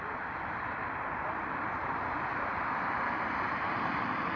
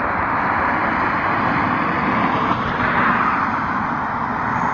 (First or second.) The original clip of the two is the second